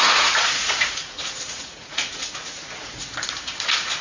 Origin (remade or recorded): remade